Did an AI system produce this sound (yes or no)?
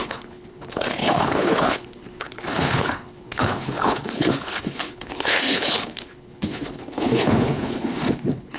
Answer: yes